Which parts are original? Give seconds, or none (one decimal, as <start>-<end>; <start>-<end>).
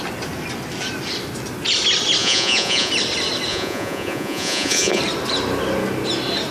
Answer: 0.0-2.2; 2.9-3.5; 5.0-6.5